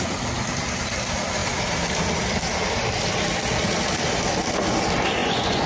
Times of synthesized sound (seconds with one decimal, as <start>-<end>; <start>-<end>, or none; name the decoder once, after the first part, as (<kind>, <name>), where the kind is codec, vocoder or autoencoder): 5.2-5.7 (vocoder, Vocos)